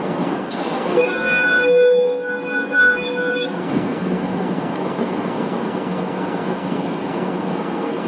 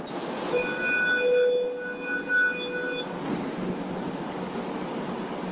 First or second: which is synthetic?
first